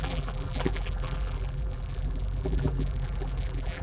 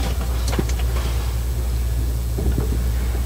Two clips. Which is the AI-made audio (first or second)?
first